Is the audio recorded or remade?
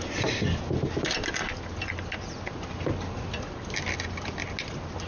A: recorded